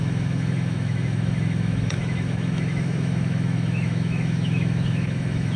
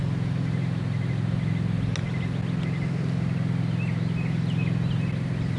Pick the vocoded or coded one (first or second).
first